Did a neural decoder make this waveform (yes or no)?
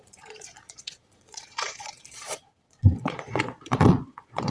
yes